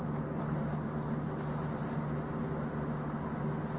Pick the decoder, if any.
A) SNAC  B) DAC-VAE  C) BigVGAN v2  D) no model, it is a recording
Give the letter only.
D